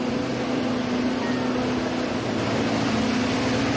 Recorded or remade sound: recorded